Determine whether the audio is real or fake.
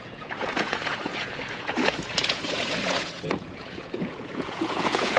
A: fake